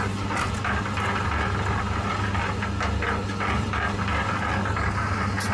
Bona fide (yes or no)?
yes